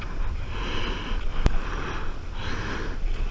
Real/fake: real